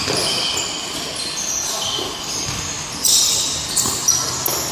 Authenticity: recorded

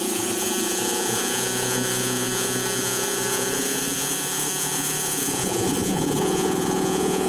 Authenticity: remade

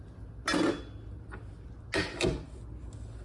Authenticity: recorded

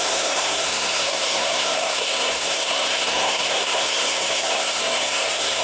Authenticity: remade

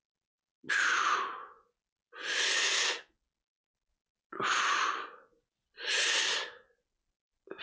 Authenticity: recorded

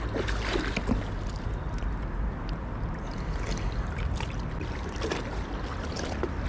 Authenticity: recorded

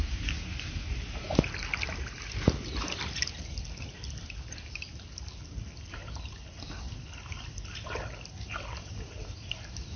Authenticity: recorded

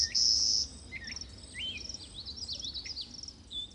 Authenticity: recorded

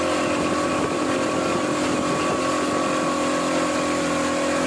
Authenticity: recorded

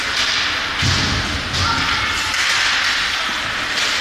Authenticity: recorded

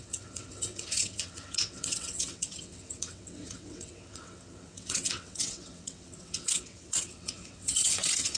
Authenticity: remade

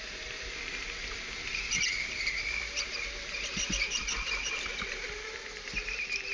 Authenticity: recorded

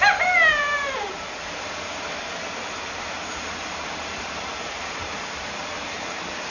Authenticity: remade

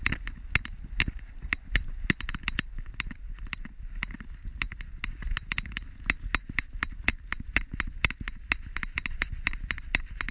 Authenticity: recorded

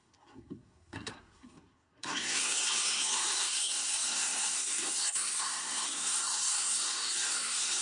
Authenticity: remade